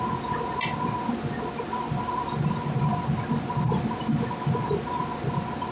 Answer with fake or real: real